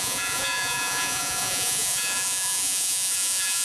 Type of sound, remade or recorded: remade